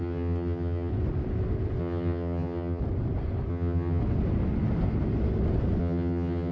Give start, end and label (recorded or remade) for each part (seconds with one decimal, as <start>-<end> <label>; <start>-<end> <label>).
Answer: 0.0-0.9 remade; 0.9-1.8 recorded; 1.8-2.8 remade; 2.8-3.5 recorded; 3.5-4.0 remade; 4.0-5.8 recorded; 5.8-6.5 remade